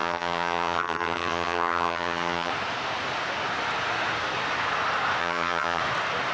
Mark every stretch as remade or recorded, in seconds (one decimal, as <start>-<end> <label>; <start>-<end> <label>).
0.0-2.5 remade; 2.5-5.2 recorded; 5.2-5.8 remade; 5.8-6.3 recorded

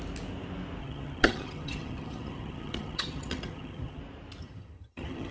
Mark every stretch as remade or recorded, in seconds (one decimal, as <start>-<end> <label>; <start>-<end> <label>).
0.0-0.8 recorded; 0.8-4.0 remade; 4.0-4.4 recorded; 4.4-5.3 remade

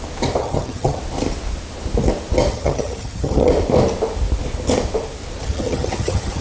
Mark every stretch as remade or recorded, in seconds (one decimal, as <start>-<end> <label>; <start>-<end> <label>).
0.0-0.4 recorded; 0.4-1.0 remade; 1.0-2.5 recorded; 2.5-3.5 remade; 3.5-5.4 recorded; 5.4-6.4 remade

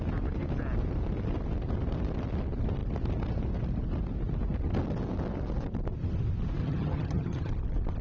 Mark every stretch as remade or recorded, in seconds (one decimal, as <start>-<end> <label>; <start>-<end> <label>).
0.0-6.6 recorded; 6.6-7.5 remade; 7.5-8.0 recorded

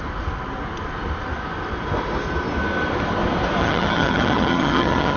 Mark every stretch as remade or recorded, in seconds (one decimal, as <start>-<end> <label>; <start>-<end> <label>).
0.0-3.6 recorded; 3.6-5.2 remade

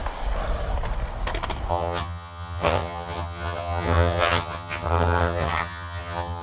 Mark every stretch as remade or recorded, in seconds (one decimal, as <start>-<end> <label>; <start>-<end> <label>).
0.0-1.7 recorded; 1.7-6.4 remade

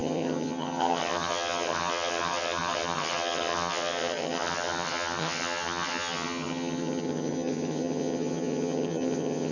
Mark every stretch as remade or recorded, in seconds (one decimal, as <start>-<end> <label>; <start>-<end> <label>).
0.0-9.5 remade

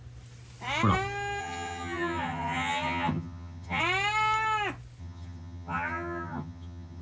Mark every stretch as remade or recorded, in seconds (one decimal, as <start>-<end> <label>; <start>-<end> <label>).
0.0-1.4 recorded; 1.4-3.8 remade; 3.8-5.0 recorded; 5.0-7.0 remade